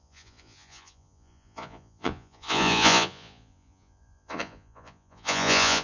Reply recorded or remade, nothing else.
remade